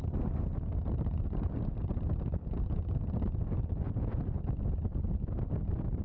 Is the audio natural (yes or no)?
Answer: yes